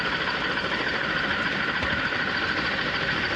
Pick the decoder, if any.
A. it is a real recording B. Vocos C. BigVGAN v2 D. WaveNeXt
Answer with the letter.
A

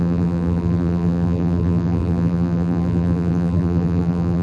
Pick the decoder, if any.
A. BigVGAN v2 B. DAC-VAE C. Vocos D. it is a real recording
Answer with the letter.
A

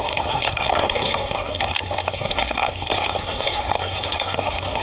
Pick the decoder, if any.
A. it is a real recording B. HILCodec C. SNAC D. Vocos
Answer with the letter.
C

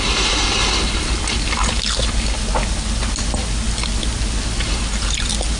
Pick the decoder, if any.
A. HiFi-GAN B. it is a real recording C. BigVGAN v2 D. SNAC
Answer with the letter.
B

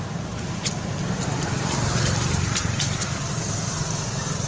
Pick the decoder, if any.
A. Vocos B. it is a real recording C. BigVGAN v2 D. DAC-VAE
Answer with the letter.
C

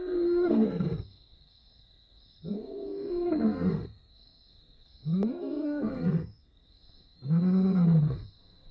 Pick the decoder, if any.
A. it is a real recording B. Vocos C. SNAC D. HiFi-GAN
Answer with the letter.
C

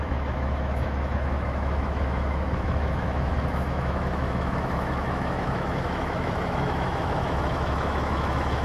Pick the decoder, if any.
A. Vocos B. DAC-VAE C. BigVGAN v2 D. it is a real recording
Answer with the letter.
B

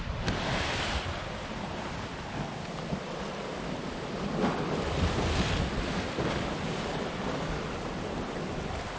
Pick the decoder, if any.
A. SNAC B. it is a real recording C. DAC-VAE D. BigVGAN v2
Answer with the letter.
D